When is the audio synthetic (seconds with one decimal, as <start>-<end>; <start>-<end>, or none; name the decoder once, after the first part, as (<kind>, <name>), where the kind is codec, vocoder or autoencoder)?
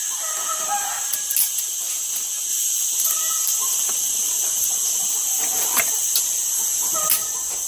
2.5-7.1 (vocoder, BigVGAN v2)